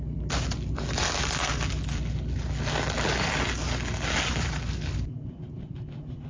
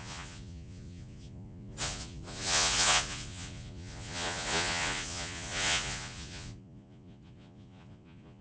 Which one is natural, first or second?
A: first